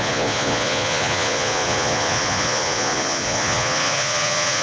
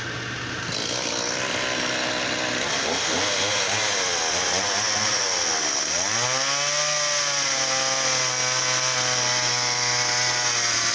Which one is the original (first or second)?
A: second